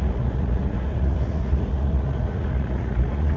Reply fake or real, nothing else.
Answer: fake